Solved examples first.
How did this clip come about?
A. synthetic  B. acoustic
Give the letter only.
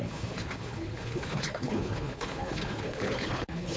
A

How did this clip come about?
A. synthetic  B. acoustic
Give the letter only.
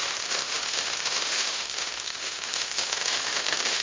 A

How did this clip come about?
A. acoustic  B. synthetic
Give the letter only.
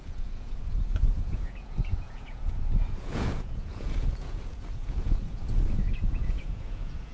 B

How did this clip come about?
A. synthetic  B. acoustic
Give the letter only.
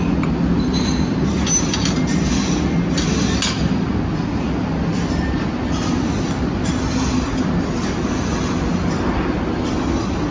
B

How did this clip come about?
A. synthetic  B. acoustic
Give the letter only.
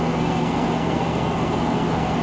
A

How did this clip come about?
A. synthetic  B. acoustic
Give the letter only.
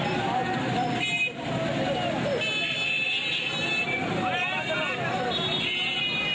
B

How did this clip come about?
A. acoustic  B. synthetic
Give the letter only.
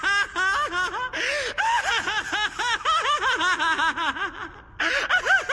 A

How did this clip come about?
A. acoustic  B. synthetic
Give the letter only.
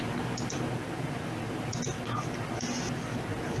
A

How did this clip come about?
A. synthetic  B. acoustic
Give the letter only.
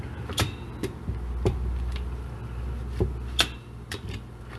A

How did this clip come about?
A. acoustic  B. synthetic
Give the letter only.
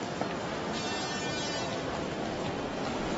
A